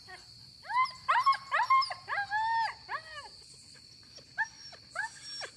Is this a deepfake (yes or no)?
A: no